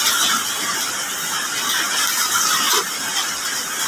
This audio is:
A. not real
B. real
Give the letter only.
B